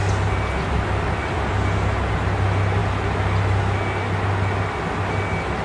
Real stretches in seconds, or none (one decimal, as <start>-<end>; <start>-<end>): 0.0-5.6